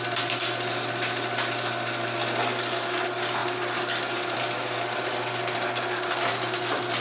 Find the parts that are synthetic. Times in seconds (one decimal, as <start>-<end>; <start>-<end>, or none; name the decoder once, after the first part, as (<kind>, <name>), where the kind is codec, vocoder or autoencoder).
none